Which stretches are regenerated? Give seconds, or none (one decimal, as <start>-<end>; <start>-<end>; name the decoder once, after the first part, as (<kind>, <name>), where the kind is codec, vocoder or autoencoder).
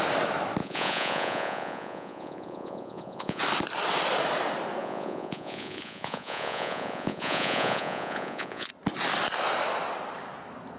0.6-3.4 (vocoder, Vocos); 4.8-8.7